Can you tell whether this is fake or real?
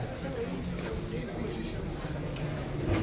real